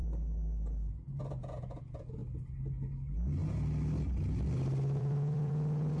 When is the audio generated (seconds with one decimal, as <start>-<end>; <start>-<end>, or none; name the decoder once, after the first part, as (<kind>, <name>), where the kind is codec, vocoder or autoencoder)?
1.2-2.2 (vocoder, Vocos); 5.0-6.0